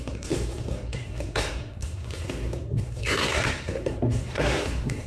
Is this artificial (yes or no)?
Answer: yes